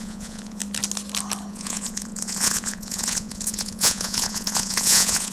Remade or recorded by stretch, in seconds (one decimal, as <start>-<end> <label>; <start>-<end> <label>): 0.0-0.6 remade; 0.6-1.5 recorded; 1.5-5.3 remade